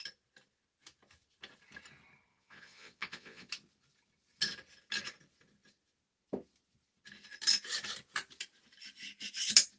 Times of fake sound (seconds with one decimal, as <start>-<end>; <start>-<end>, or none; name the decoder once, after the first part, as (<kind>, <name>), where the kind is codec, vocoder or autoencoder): 2.3-3.5 (vocoder, Vocos)